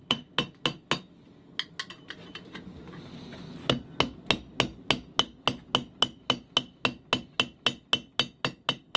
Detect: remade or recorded recorded